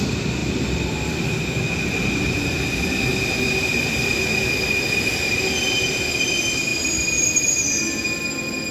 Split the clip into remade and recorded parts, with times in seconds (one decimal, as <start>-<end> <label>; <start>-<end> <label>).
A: 0.0-6.7 recorded; 6.7-7.8 remade; 7.8-8.7 recorded